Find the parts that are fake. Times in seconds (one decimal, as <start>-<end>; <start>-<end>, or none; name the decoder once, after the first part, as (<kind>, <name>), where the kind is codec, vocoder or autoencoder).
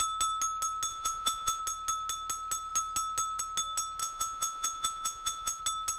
0.9-1.6 (vocoder, Vocos); 4.0-5.6